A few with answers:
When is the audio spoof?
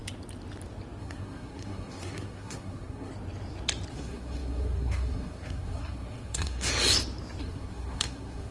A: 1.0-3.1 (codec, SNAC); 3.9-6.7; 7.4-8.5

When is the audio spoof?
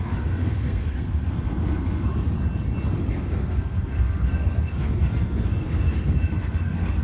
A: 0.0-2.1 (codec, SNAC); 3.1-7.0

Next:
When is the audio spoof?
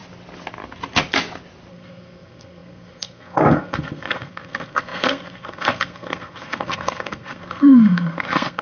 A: 1.7-8.6 (codec, SNAC)